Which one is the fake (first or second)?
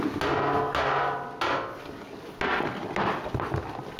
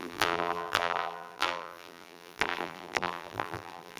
second